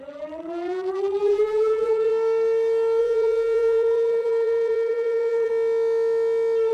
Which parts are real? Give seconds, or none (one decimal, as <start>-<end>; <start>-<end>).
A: 2.1-3.0; 5.5-6.7